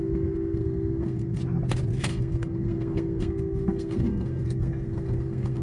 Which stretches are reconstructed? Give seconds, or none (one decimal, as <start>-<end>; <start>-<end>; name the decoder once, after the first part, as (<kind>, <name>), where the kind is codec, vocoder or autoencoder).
0.0-1.4 (codec, SNAC); 2.0-5.6